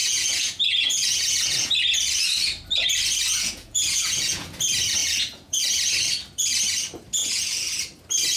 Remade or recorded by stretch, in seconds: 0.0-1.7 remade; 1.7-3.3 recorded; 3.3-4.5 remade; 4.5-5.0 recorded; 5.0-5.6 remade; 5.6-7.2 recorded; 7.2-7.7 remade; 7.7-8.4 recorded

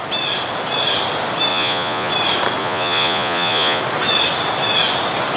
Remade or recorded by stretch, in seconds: 0.0-1.5 recorded; 1.5-2.1 remade; 2.1-2.6 recorded; 2.6-3.8 remade; 3.8-5.4 recorded

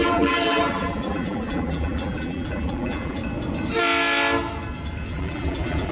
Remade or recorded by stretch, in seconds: 0.0-3.2 remade; 3.2-5.1 recorded; 5.1-5.9 remade

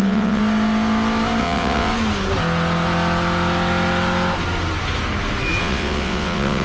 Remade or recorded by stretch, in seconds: 0.0-0.4 remade; 0.4-1.4 recorded; 1.4-1.9 remade; 1.9-5.6 recorded; 5.6-6.6 remade

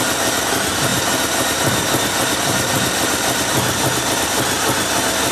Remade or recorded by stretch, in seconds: 0.0-5.3 recorded